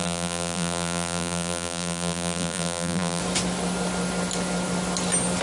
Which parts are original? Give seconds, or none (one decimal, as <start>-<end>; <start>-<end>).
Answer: 3.2-5.4